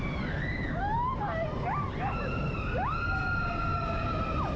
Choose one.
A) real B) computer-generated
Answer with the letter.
A